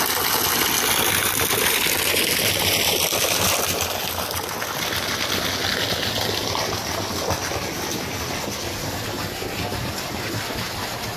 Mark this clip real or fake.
real